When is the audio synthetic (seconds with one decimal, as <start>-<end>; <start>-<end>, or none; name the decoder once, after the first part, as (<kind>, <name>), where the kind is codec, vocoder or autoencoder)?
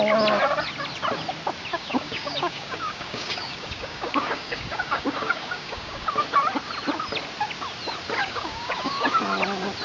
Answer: 1.7-6.1 (codec, DAC); 8.2-9.2